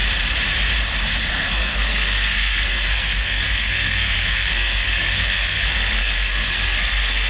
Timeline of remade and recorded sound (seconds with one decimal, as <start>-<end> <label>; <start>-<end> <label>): 0.0-1.3 recorded; 1.3-7.3 remade